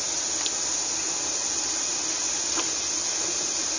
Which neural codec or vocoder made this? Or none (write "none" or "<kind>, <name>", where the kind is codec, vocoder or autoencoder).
none